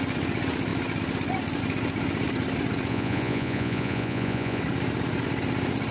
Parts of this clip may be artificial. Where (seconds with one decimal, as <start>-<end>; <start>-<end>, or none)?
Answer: 2.9-4.6